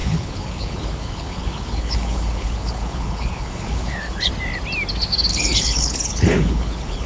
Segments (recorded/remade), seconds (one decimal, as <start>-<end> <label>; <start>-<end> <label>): 0.0-4.3 remade; 4.3-5.3 recorded; 5.3-7.1 remade